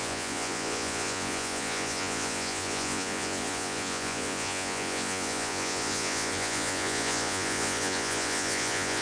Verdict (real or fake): fake